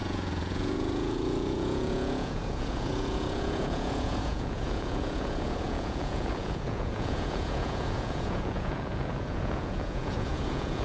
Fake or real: fake